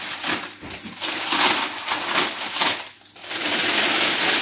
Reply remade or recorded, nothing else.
recorded